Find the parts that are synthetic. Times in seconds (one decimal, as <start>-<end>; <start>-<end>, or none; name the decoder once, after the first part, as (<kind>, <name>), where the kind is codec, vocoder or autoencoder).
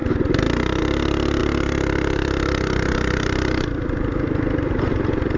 none